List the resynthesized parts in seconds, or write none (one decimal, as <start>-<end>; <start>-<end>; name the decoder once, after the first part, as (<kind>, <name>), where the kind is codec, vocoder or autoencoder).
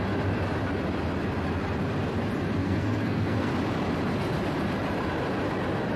2.6-3.5 (codec, SNAC)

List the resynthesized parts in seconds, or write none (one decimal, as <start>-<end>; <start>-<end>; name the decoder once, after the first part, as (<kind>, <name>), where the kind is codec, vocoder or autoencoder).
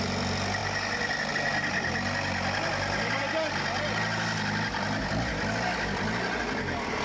none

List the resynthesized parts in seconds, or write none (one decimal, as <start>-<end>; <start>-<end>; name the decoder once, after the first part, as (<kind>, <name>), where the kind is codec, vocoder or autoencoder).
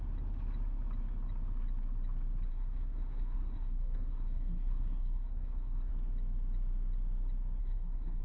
2.5-5.9 (codec, SNAC); 7.6-8.2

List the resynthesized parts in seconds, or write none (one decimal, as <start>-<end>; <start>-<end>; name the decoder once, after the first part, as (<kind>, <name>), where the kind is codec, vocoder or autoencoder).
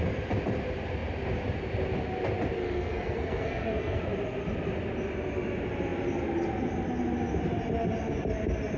2.6-4.0 (codec, SNAC)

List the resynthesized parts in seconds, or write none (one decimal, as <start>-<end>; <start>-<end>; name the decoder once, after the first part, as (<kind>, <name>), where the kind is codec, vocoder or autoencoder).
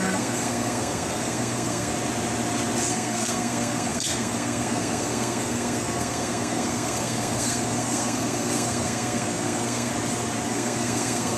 0.0-1.9 (codec, SNAC); 2.9-9.9; 10.5-11.4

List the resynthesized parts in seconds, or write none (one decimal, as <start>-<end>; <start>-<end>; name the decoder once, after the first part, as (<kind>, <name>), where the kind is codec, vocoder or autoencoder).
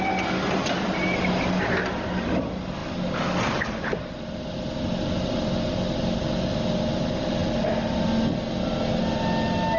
none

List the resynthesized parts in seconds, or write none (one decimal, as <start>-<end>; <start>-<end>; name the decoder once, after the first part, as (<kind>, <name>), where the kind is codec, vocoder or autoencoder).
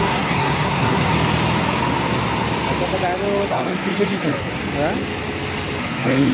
0.0-1.1 (codec, SNAC); 3.5-4.6; 5.8-6.3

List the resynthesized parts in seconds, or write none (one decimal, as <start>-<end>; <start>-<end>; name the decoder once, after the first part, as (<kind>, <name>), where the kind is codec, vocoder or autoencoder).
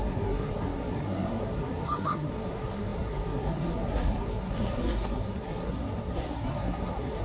0.0-7.2 (codec, SNAC)